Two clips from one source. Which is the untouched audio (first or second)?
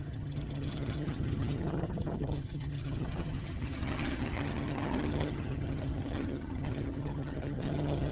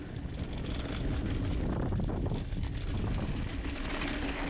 second